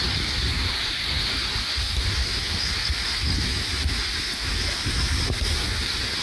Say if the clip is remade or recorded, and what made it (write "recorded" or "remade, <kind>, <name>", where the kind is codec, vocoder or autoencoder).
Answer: recorded